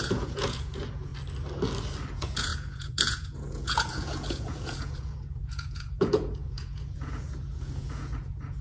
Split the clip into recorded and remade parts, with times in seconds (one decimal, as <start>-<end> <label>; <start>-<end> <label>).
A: 0.0-1.1 remade; 1.1-2.1 recorded; 2.1-8.6 remade